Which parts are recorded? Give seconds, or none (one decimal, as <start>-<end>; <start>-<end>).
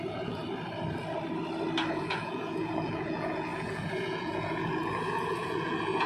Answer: 0.4-1.9